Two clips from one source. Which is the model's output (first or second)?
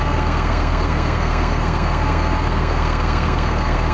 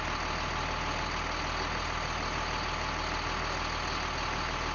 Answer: first